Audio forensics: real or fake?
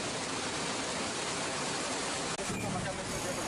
real